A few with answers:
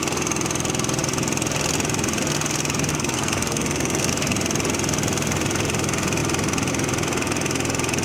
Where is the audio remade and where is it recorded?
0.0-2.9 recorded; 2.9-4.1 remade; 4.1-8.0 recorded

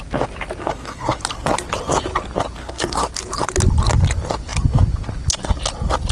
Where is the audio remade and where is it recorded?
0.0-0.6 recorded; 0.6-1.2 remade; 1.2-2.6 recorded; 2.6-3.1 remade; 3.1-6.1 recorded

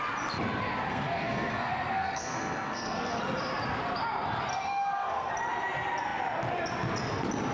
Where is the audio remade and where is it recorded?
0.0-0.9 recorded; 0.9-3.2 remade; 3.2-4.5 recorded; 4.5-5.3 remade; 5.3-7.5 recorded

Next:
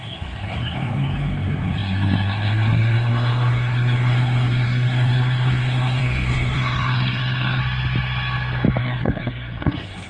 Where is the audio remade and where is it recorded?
0.0-7.6 remade; 7.6-8.8 recorded; 8.8-10.1 remade

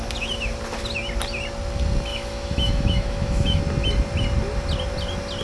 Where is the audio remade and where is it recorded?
0.0-2.1 recorded; 2.1-3.6 remade; 3.6-5.4 recorded